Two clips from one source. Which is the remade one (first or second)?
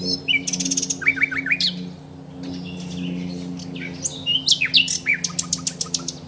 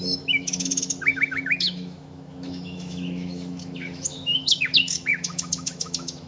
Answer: second